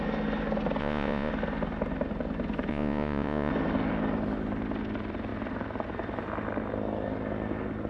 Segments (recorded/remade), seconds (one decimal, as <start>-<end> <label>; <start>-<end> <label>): 0.0-0.8 recorded; 0.8-1.3 remade; 1.3-2.7 recorded; 2.7-3.5 remade; 3.5-7.9 recorded